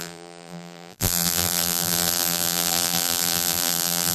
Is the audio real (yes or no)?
no